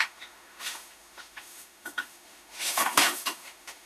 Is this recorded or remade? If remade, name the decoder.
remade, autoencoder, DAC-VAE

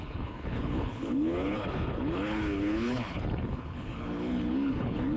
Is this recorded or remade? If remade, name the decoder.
remade, codec, HILCodec